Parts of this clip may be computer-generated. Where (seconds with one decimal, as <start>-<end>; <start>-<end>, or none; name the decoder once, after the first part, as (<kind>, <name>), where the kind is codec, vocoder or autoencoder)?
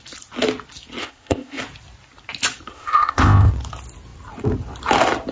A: 1.0-1.6 (codec, ZipCodec); 2.7-3.5